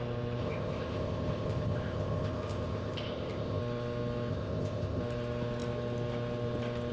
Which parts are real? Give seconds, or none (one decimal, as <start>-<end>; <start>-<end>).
0.0-0.4; 3.6-4.3; 5.0-6.9